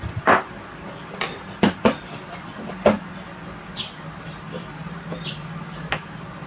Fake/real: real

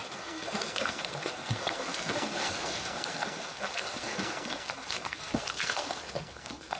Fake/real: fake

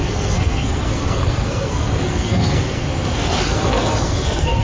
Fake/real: fake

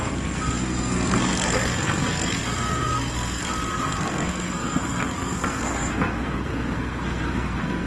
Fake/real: fake